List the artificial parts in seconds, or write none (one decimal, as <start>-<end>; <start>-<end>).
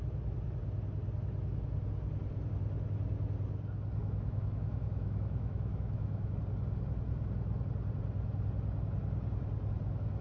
4.0-6.3